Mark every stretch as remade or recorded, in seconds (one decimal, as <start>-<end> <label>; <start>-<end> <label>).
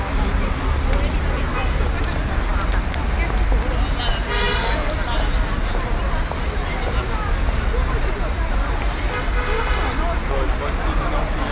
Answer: 0.0-11.5 recorded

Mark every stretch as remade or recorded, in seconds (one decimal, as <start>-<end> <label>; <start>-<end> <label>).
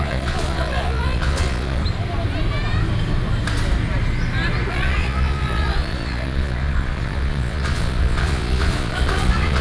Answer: 0.0-1.8 remade; 1.8-4.7 recorded; 4.7-9.6 remade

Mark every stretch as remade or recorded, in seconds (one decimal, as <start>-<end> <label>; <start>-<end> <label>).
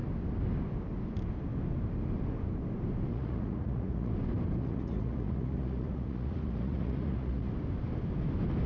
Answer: 0.0-3.1 recorded; 3.1-4.1 remade; 4.1-4.6 recorded; 4.6-7.5 remade; 7.5-8.7 recorded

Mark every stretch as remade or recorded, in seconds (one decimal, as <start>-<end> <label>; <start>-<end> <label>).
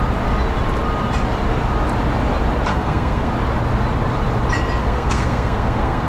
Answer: 0.0-2.7 recorded; 2.7-3.3 remade; 3.3-4.8 recorded; 4.8-6.1 remade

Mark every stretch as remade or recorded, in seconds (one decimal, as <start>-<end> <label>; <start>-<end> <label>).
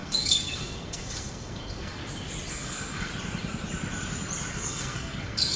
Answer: 0.0-2.0 remade; 2.0-2.5 recorded; 2.5-3.1 remade; 3.1-4.5 recorded; 4.5-5.6 remade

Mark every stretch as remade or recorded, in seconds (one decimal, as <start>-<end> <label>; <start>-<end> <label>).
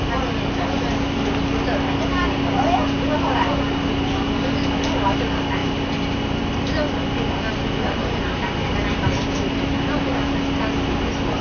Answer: 0.0-11.4 recorded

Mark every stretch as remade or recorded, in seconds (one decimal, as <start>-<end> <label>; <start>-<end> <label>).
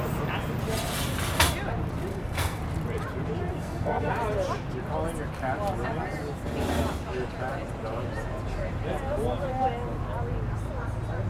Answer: 0.0-2.1 recorded; 2.1-2.6 remade; 2.6-3.5 recorded; 3.5-4.1 remade; 4.1-11.3 recorded